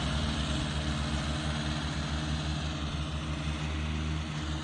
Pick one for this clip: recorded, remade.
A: recorded